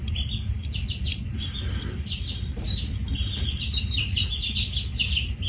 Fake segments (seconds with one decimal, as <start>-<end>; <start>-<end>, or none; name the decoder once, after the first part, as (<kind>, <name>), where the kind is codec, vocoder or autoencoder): none